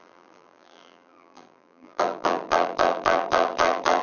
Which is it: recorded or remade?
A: remade